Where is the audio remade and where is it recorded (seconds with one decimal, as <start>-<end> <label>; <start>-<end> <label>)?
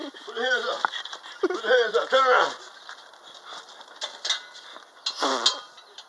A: 0.0-6.1 recorded